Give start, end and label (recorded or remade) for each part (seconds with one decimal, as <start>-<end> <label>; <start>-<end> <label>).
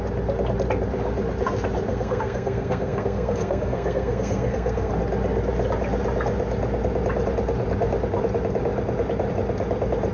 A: 0.0-1.9 recorded; 1.9-4.9 remade; 4.9-10.1 recorded